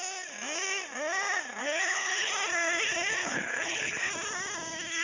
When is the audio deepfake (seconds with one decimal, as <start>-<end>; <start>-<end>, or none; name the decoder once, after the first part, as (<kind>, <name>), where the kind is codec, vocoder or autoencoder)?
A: 1.6-2.3 (codec, HILCodec); 3.2-4.1